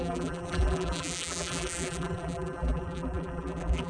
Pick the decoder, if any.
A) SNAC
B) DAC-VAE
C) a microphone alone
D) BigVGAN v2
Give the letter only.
D